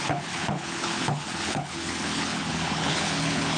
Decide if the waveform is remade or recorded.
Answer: remade